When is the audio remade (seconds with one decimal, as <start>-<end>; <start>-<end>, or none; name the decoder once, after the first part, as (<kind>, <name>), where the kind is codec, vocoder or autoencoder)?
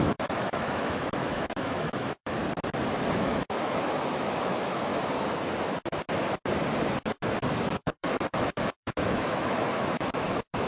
0.0-2.4 (autoencoder, DAC-VAE); 3.2-4.9; 7.7-10.7